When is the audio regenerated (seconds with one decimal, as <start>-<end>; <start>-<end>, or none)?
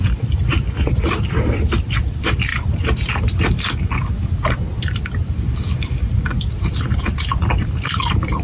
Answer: 0.0-4.7; 5.5-8.4